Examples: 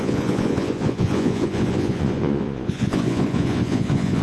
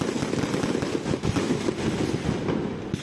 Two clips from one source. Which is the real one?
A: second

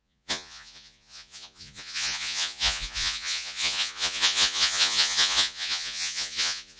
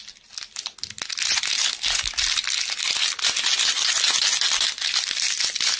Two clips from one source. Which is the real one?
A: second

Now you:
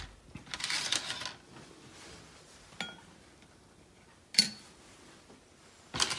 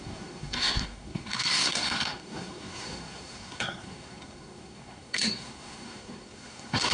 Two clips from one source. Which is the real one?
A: first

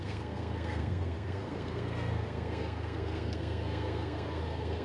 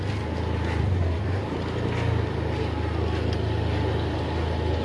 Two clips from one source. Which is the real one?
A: second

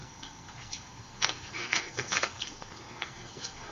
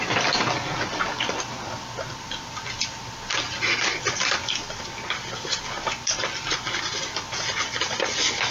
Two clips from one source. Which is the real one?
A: second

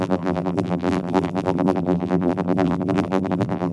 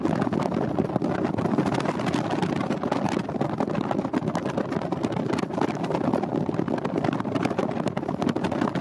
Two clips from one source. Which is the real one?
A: second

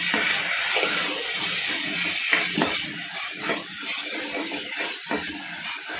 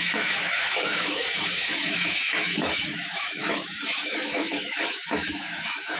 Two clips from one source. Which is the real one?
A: first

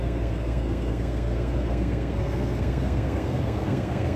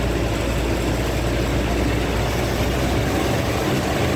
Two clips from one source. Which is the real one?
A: second